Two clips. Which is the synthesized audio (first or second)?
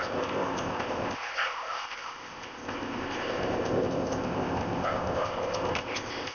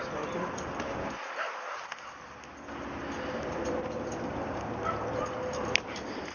first